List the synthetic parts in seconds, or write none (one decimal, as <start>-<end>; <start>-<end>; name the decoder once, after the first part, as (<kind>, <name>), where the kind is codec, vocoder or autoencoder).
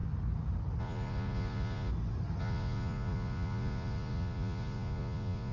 0.8-1.9 (vocoder, Vocos); 2.4-5.5